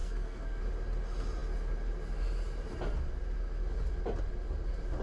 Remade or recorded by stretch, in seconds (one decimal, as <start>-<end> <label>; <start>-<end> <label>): 0.0-0.6 remade; 0.6-5.0 recorded